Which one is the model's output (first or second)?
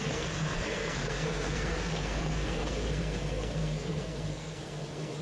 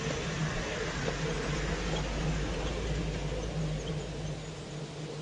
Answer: first